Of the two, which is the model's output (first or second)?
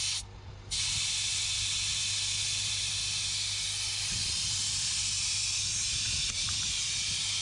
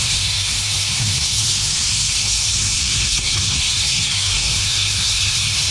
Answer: second